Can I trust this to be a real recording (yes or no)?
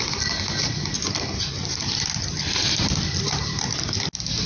yes